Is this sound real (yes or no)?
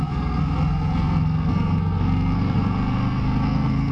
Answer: no